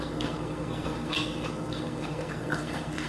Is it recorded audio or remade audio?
remade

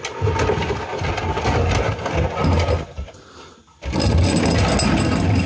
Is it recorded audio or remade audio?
recorded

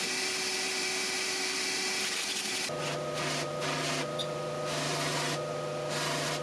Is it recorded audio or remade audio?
recorded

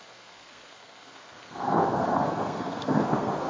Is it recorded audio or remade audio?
remade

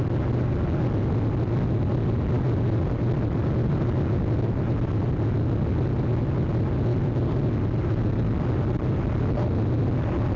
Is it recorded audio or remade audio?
recorded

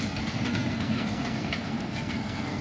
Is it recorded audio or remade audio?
remade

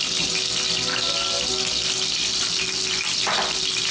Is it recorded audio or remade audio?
recorded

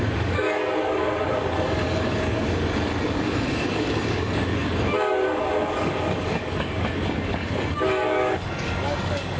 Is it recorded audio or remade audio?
remade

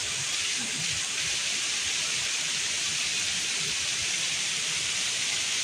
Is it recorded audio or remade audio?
recorded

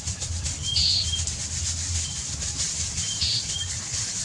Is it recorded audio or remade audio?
remade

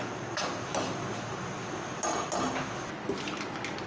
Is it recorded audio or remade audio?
recorded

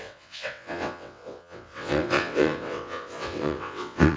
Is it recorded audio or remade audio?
remade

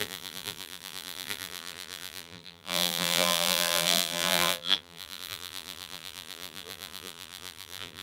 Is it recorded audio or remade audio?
remade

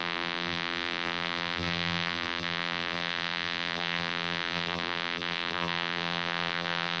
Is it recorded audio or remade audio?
remade